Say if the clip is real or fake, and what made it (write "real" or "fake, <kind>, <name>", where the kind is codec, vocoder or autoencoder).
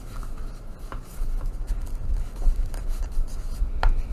real